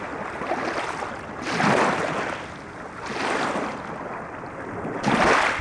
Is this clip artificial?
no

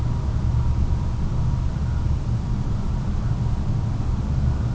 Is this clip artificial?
no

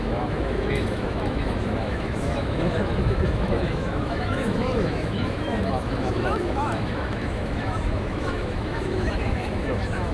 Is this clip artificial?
yes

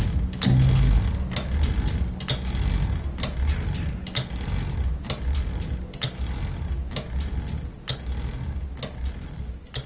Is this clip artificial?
no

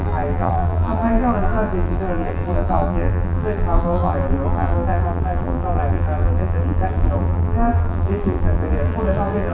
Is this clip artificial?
yes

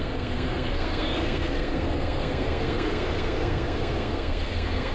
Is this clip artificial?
yes